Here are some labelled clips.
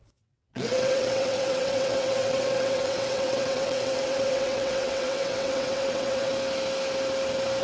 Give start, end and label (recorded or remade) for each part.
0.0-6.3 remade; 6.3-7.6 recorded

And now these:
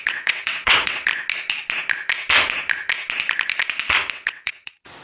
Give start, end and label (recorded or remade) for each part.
0.0-1.1 remade; 1.1-4.1 recorded; 4.1-5.0 remade

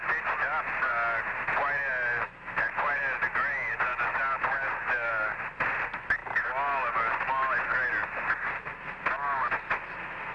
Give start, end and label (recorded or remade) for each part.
0.0-10.3 recorded

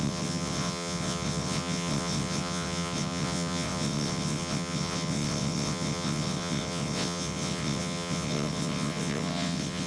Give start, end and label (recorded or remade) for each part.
0.0-9.9 remade

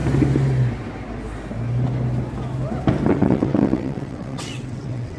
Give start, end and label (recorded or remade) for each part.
0.0-3.1 recorded; 3.1-5.2 remade

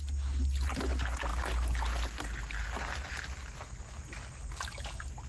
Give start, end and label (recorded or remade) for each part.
0.0-5.3 recorded

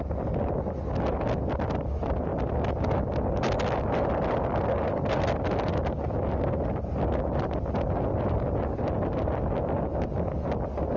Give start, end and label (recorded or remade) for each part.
0.0-11.0 recorded

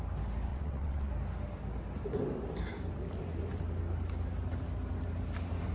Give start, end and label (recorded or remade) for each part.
0.0-0.5 recorded; 0.5-1.1 remade; 1.1-5.7 recorded